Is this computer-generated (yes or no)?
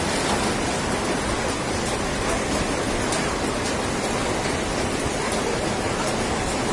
no